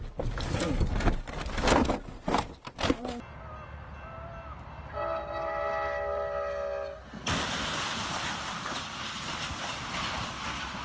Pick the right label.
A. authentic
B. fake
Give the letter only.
A